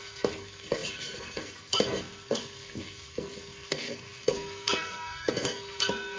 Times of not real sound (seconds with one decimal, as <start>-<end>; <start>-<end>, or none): 0.0-6.2